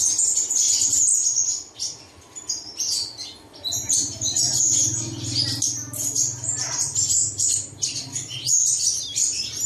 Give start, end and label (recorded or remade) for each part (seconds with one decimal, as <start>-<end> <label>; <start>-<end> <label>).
0.0-9.7 recorded